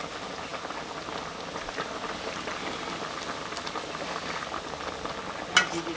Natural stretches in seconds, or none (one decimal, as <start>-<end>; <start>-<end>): 0.0-6.0